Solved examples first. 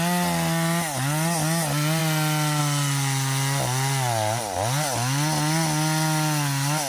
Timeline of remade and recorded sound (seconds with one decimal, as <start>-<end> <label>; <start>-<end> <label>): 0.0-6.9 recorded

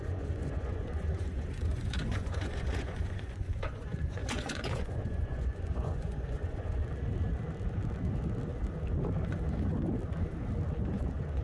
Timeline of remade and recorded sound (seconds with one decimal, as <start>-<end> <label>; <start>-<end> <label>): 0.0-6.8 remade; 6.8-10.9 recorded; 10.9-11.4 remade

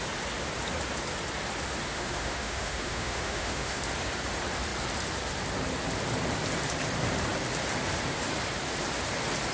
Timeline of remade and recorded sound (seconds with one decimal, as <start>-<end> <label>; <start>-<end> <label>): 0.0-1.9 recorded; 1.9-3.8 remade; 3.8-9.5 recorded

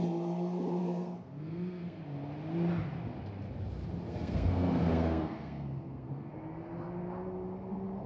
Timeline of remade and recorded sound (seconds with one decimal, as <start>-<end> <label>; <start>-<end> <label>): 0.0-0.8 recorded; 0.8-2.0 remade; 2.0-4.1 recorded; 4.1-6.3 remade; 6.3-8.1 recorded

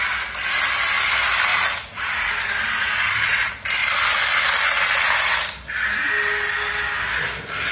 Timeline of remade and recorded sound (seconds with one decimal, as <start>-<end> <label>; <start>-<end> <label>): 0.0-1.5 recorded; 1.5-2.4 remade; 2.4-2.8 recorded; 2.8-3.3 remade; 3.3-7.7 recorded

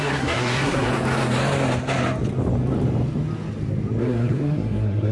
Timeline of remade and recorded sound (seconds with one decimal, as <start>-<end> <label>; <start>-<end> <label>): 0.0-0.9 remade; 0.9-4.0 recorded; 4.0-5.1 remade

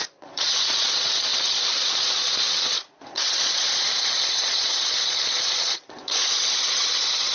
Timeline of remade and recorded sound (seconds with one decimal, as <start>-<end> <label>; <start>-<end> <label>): 0.0-7.3 remade